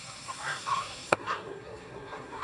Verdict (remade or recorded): remade